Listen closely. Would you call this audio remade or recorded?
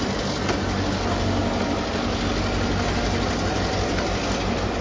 recorded